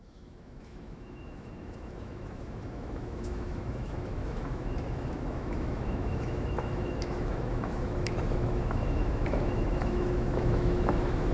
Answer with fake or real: fake